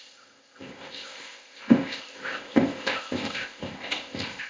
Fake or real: fake